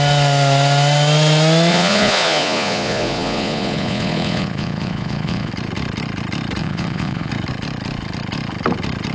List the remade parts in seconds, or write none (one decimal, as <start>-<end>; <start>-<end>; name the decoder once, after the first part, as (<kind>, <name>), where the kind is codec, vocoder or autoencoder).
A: 1.7-5.5 (vocoder, Vocos); 6.6-7.3